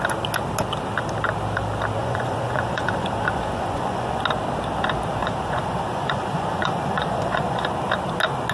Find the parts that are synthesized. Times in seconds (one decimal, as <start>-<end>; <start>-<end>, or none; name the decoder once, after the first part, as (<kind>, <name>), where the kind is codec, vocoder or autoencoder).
2.0-4.2 (vocoder, Vocos); 5.2-7.7